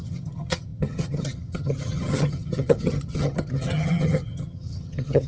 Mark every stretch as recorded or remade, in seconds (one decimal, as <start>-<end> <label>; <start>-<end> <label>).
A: 0.0-5.3 remade